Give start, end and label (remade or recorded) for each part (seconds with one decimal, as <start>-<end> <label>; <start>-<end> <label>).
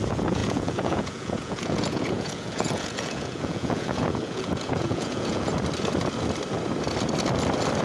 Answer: 0.0-5.5 remade; 5.5-7.8 recorded